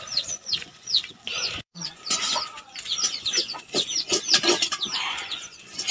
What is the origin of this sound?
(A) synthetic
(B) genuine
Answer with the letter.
A